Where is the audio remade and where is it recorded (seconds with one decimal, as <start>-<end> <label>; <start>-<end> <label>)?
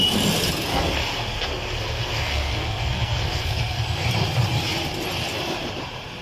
0.0-0.7 recorded; 0.7-3.8 remade; 3.8-6.2 recorded